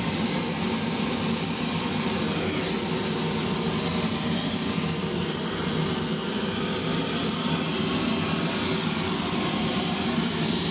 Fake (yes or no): no